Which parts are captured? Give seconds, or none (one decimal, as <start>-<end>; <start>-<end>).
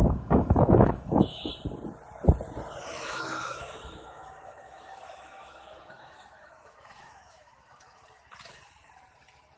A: 1.5-2.8; 8.0-9.6